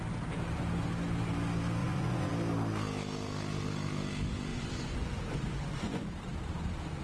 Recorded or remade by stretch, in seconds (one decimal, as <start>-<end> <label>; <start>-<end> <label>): 0.0-1.8 recorded; 1.8-2.3 remade; 2.3-4.5 recorded; 4.5-6.1 remade; 6.1-7.0 recorded